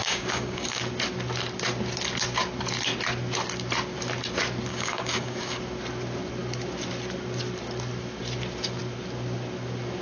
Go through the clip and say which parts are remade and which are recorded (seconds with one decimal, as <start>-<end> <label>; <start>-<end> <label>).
0.0-0.8 remade; 0.8-4.7 recorded; 4.7-5.6 remade; 5.6-10.0 recorded